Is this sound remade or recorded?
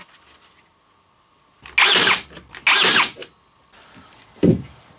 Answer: recorded